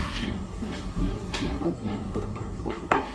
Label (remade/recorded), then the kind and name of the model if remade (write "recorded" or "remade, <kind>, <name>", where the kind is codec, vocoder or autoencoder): remade, codec, SNAC